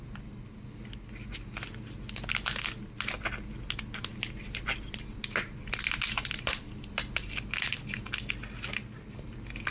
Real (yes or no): yes